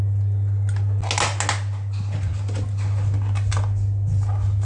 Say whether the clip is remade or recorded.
recorded